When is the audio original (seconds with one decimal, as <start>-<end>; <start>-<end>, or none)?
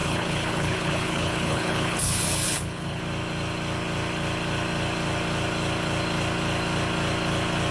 3.0-7.7